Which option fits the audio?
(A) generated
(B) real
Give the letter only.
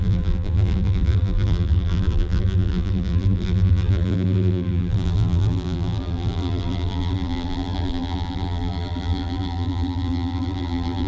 A